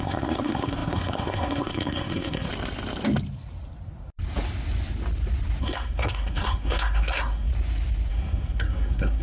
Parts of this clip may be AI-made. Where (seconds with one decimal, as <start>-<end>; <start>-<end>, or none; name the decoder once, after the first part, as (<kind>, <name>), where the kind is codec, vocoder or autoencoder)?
0.0-2.5 (codec, SNAC); 5.6-7.5; 8.1-9.2